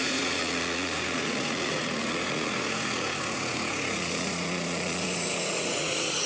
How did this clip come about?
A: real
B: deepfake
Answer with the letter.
B